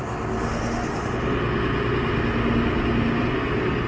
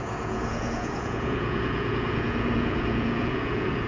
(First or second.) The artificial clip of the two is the second